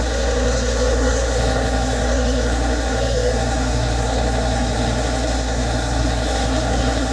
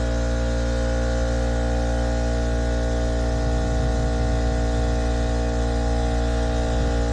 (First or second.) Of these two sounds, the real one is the second